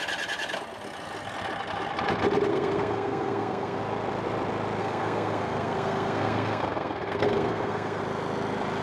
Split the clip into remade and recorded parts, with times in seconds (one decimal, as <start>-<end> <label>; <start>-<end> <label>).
0.0-2.5 recorded; 2.5-3.8 remade; 3.8-4.8 recorded; 4.8-8.0 remade; 8.0-8.8 recorded